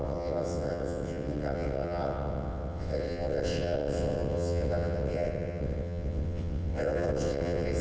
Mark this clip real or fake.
fake